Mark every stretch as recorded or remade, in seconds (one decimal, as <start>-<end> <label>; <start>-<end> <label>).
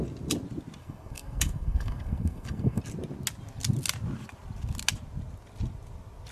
0.0-0.8 recorded; 0.8-2.8 remade; 2.8-6.3 recorded